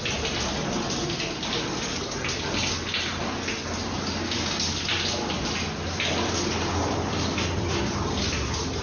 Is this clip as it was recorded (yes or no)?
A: yes